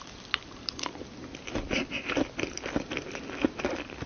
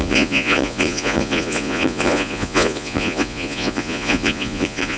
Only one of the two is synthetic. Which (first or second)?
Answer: second